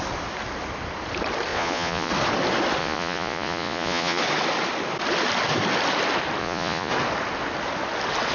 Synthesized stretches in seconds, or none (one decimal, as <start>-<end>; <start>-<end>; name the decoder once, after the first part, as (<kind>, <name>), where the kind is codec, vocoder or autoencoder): 1.5-2.1 (vocoder, Vocos); 2.8-4.2; 6.4-6.9